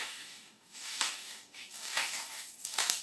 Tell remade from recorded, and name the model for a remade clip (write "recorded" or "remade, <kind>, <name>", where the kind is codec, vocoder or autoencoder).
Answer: remade, codec, DAC